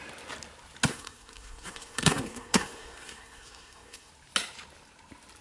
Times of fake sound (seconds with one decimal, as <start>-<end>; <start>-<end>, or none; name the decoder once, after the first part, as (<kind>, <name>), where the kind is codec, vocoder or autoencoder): 0.9-4.1 (codec, SNAC)